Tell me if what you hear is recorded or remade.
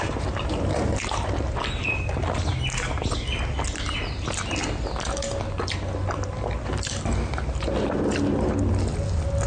recorded